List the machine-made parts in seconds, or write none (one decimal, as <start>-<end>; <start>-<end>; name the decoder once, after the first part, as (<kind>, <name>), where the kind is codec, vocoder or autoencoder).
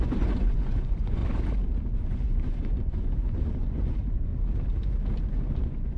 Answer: 0.0-1.2 (vocoder, Vocos); 2.0-4.3; 5.2-6.0